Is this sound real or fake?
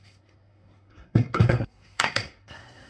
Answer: fake